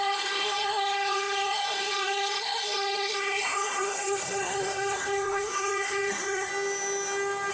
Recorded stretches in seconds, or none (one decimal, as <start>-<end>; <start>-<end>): 6.5-7.5